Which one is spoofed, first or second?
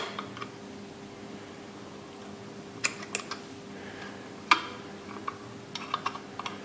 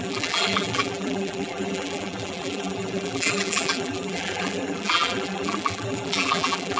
second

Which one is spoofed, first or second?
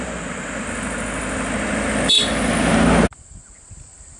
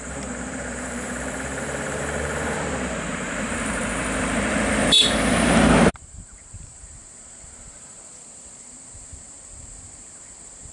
second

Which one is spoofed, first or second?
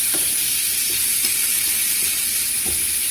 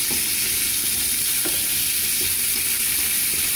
first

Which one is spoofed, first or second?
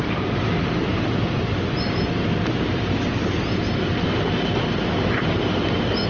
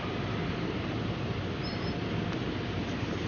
second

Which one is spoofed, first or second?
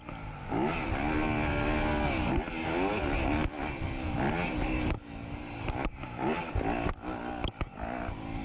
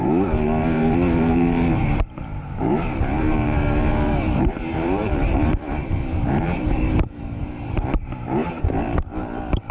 second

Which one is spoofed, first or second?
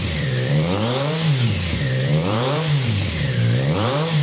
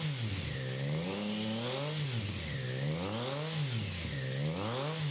first